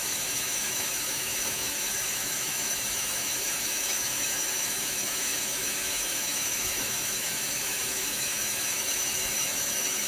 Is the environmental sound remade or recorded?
remade